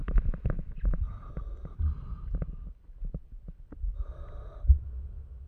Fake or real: real